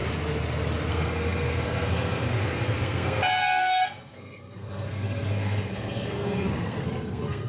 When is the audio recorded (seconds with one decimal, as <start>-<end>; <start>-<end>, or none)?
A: 0.0-0.9